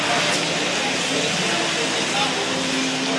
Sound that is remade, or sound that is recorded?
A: recorded